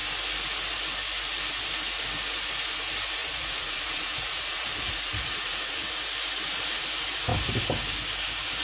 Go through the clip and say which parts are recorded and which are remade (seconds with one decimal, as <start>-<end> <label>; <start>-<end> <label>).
0.0-3.2 recorded; 3.2-5.9 remade; 5.9-8.6 recorded